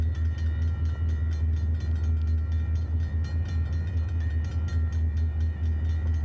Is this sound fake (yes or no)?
no